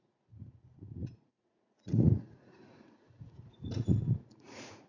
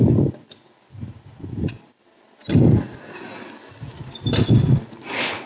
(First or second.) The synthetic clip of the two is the first